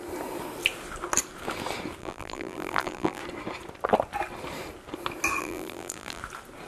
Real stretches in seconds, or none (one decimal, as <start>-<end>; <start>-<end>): 0.0-2.0; 3.2-5.4; 6.2-6.7

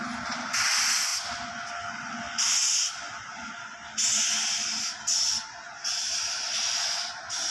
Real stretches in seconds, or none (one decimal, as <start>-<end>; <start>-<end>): 0.0-7.5

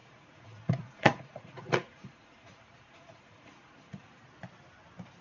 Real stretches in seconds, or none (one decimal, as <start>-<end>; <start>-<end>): 4.2-5.2